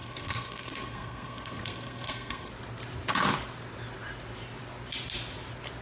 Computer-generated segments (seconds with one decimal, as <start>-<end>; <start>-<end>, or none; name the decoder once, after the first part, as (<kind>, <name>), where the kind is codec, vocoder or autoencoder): 0.0-2.5 (codec, SNAC)